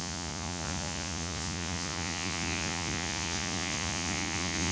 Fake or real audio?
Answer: fake